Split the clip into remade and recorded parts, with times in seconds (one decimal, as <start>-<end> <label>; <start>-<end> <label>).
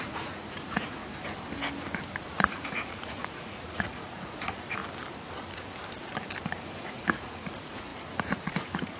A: 0.0-1.0 remade; 1.0-2.2 recorded; 2.2-4.8 remade; 4.8-6.8 recorded; 6.8-9.0 remade